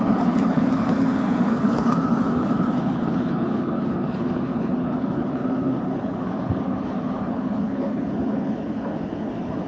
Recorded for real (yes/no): no